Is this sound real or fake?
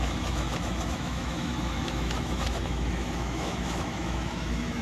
fake